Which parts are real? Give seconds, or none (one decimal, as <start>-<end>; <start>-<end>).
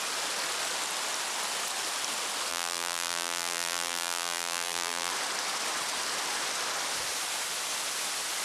0.0-2.5; 5.1-8.4